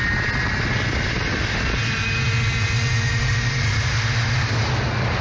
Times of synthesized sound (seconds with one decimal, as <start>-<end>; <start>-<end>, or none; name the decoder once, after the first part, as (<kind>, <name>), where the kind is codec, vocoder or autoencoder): none